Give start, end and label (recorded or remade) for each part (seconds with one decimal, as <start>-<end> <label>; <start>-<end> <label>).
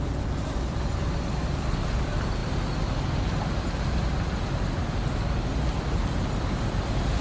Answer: 0.0-2.4 remade; 2.4-6.4 recorded; 6.4-7.2 remade